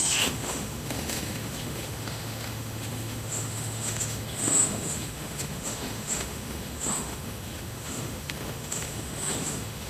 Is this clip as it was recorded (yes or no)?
no